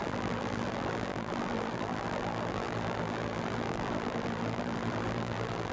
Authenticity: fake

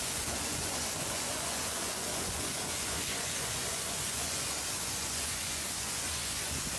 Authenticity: fake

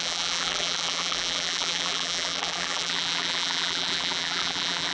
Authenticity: fake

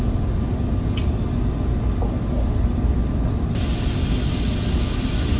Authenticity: real